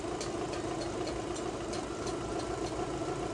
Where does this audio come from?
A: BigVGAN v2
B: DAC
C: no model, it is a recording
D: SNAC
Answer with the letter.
C